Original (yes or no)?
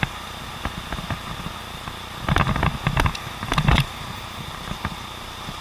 yes